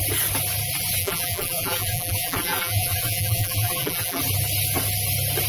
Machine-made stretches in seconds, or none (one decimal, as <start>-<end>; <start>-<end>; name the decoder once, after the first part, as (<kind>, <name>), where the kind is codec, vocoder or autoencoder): 1.0-4.2 (vocoder, BigVGAN v2)